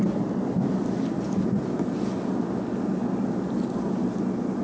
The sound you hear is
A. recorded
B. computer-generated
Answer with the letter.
A